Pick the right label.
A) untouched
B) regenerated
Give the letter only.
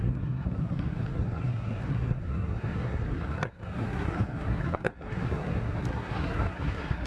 B